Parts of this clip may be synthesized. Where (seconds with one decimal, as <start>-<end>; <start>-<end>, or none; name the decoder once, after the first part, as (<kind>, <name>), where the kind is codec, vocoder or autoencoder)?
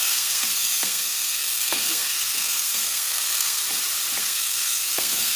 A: 0.0-3.6 (codec, SNAC); 4.2-5.4